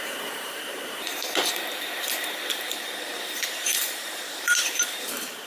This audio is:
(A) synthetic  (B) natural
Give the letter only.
A